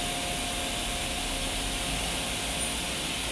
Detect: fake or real real